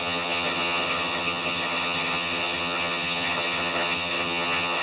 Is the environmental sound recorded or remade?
remade